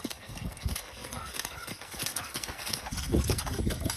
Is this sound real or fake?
fake